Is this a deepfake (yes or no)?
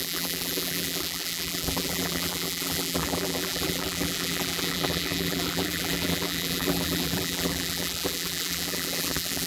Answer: yes